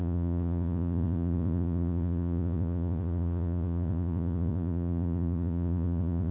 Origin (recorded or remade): remade